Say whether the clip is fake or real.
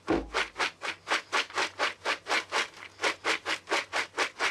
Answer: real